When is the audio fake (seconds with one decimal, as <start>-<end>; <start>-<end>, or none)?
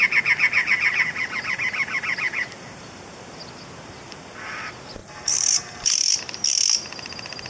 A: 0.6-3.3; 5.0-6.2